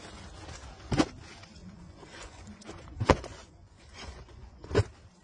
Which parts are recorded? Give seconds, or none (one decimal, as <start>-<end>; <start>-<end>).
0.0-1.6; 4.7-5.2